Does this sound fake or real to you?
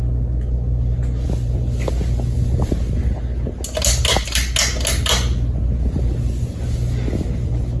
real